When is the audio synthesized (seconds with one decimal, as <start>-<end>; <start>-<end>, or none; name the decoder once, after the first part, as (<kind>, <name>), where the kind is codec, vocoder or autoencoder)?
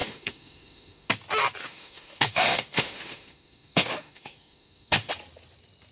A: 0.0-1.1 (autoencoder, DAC-VAE); 1.6-5.1